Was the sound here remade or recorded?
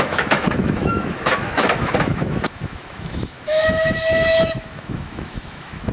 remade